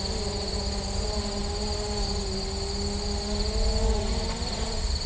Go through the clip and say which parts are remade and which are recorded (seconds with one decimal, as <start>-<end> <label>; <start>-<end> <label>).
0.0-5.1 recorded